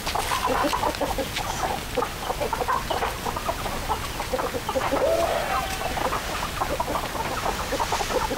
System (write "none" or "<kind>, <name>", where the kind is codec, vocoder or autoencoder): none